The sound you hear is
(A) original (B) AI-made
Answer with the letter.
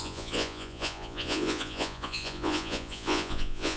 B